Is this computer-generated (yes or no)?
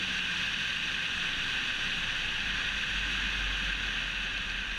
no